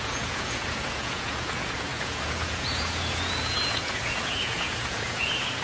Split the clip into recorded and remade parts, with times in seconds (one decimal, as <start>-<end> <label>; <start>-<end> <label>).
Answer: 0.0-5.6 remade